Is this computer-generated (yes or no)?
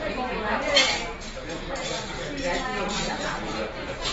no